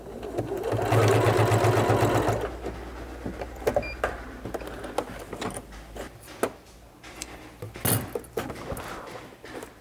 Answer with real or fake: real